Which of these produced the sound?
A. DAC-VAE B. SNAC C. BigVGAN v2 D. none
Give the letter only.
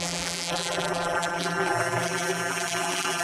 C